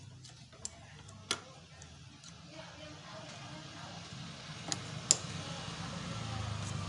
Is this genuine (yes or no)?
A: yes